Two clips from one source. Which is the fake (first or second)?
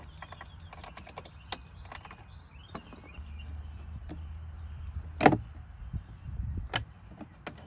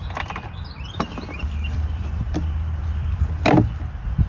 second